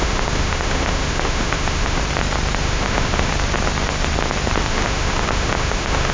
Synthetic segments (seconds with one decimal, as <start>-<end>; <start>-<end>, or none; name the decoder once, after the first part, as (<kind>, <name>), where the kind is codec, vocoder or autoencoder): 0.0-2.0 (autoencoder, DAC-VAE); 2.6-3.3; 4.7-6.1

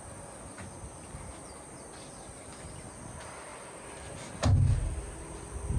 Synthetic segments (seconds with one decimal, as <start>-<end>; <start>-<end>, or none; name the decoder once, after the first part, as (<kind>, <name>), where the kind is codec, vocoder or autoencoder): none

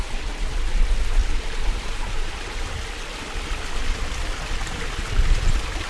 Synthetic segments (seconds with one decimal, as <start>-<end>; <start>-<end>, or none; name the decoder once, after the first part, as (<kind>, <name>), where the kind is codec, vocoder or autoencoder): 1.2-2.7 (vocoder, BigVGAN v2)